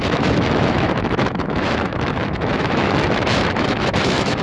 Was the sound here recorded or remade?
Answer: remade